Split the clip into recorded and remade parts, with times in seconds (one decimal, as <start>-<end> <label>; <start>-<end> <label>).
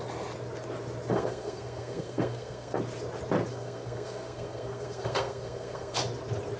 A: 0.0-1.1 recorded; 1.1-2.8 remade; 2.8-3.5 recorded; 3.5-6.0 remade; 6.0-6.6 recorded